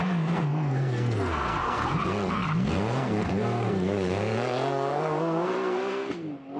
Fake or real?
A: fake